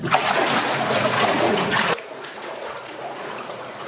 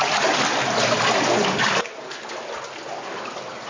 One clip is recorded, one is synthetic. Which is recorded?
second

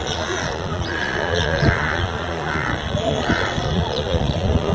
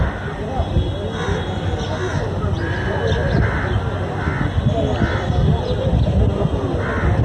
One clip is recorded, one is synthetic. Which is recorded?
second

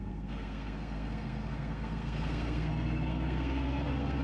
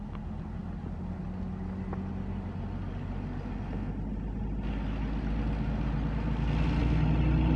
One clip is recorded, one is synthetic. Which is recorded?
second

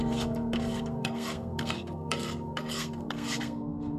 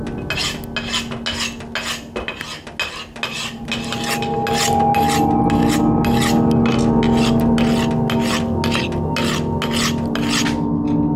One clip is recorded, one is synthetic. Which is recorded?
second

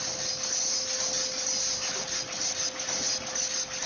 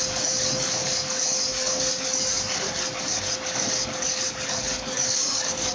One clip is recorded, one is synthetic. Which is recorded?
first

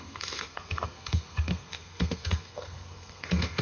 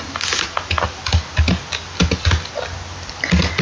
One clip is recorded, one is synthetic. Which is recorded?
second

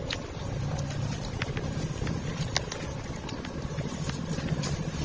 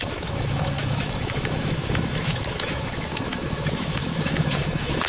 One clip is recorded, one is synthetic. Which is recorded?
first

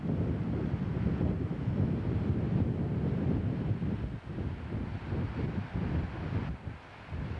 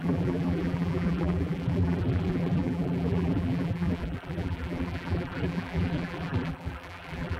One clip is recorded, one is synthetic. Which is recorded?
first